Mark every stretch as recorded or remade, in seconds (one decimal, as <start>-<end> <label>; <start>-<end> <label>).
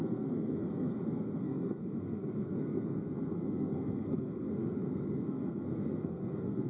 0.0-6.7 remade